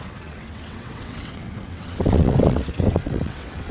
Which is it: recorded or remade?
remade